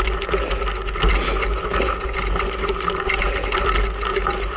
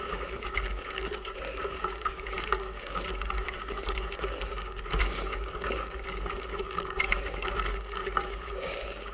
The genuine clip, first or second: first